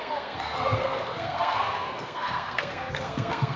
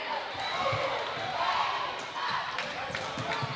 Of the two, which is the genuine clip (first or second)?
second